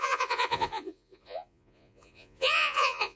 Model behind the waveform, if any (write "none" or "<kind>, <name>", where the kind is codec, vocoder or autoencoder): vocoder, Vocos